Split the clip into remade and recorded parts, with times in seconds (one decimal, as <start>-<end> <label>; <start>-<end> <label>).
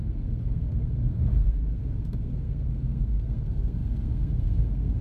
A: 0.0-5.0 remade